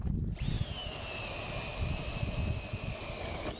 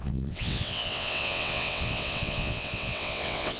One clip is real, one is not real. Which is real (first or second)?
first